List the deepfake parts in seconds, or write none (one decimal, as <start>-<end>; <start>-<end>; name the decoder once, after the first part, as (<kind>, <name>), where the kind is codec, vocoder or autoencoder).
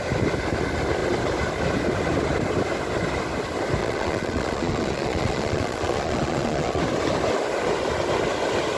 3.8-6.8 (vocoder, Vocos)